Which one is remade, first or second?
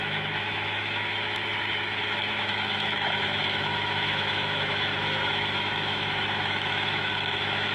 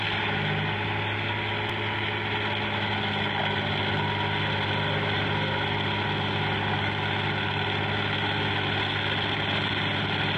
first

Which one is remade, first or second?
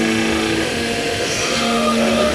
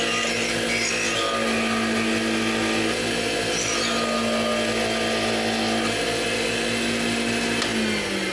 first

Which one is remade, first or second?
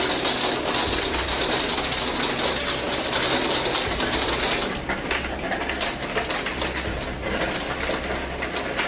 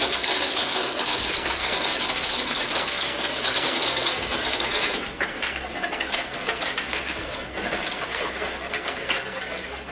second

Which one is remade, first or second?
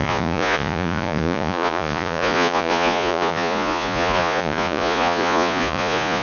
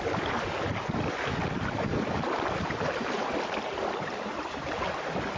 first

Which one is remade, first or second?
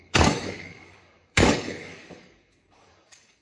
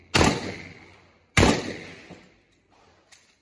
first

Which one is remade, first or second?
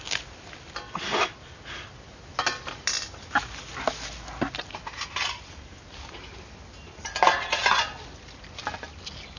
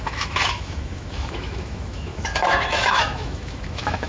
second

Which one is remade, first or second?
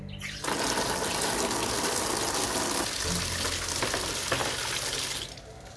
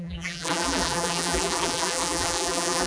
second